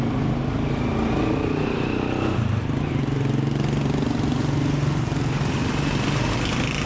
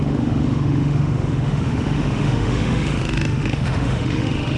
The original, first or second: first